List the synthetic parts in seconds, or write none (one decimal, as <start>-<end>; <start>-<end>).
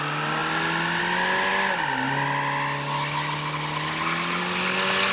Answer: none